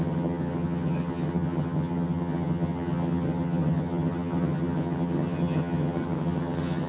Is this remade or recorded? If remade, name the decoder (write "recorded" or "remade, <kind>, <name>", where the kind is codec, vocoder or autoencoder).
remade, vocoder, HiFi-GAN